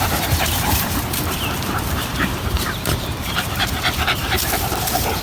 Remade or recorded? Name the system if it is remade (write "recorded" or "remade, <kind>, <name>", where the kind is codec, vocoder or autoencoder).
remade, vocoder, BigVGAN v2